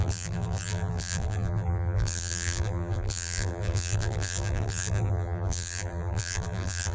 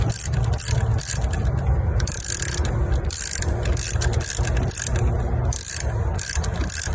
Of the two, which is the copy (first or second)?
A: first